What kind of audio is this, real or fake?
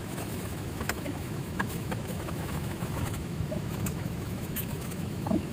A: fake